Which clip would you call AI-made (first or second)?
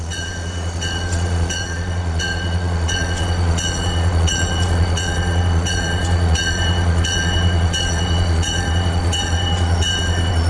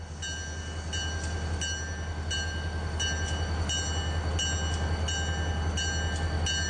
first